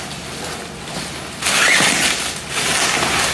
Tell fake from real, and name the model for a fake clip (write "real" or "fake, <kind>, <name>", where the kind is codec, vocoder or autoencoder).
real